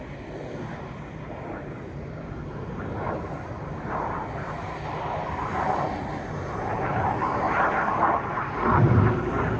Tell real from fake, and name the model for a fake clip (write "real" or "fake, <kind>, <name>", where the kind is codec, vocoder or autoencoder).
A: real